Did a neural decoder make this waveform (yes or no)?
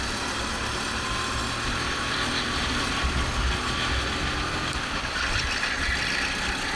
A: no